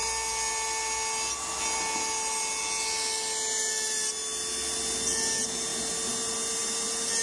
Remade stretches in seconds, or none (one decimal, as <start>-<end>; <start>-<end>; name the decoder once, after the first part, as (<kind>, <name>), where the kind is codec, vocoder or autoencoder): none